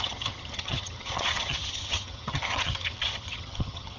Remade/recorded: remade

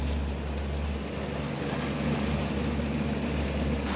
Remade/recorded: recorded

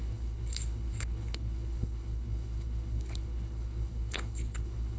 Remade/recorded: remade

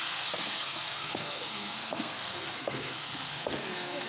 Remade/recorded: remade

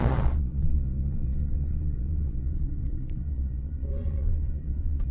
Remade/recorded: remade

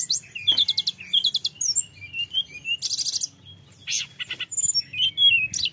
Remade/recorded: recorded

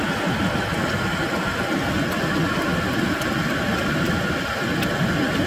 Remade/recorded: recorded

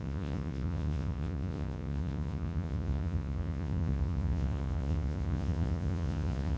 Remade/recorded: remade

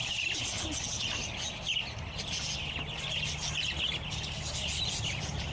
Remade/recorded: recorded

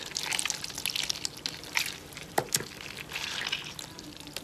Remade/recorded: recorded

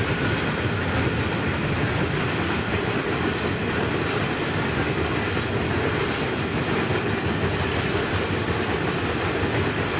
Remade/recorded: recorded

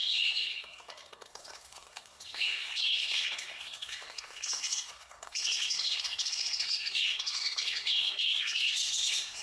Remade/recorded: remade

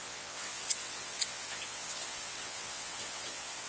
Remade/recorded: remade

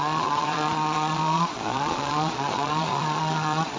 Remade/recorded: remade